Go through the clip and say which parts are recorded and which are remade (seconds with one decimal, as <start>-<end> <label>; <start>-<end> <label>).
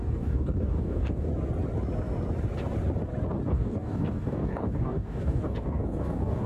0.0-1.3 remade; 1.3-3.5 recorded; 3.5-6.5 remade